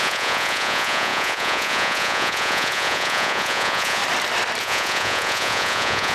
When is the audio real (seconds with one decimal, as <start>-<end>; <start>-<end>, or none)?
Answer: 4.0-4.6